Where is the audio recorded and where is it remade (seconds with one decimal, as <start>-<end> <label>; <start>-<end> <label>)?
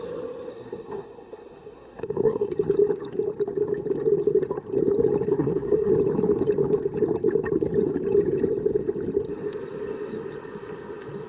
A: 0.0-0.5 recorded; 0.5-2.5 remade; 2.5-5.3 recorded; 5.3-5.9 remade; 5.9-11.3 recorded